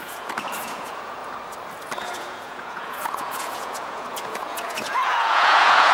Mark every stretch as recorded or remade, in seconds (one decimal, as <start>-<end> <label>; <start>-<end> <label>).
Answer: 0.0-1.2 remade; 1.2-2.0 recorded; 2.0-5.9 remade